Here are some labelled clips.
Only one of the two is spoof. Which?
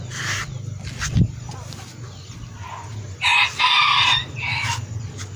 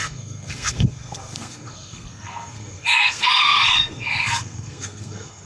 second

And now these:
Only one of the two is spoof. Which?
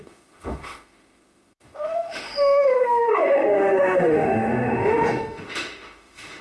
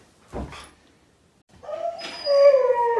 first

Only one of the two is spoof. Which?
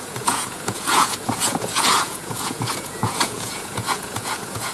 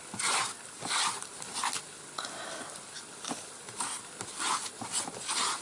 first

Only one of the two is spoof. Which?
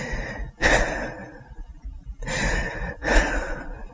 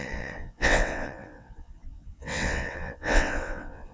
second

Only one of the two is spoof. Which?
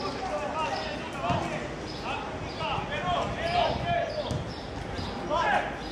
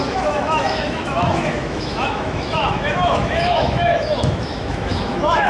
second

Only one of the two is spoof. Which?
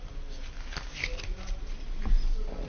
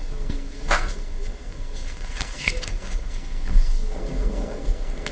second